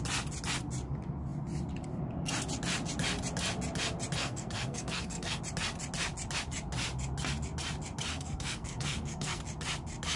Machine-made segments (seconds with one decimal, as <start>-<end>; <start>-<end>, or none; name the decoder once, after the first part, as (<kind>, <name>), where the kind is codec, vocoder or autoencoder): 4.2-5.4 (codec, SNAC); 8.1-9.4

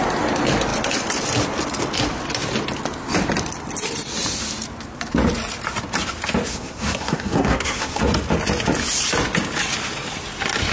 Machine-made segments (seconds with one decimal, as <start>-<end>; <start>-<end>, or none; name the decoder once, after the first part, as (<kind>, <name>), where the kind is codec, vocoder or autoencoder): 6.5-8.0 (codec, SNAC)

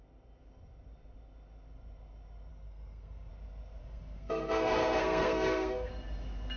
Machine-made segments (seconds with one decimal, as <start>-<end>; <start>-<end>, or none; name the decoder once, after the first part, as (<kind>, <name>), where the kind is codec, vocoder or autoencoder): 2.5-3.3 (codec, SNAC); 3.8-5.9